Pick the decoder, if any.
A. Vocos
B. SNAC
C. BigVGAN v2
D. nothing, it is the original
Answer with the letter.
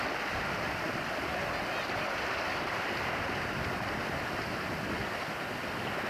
D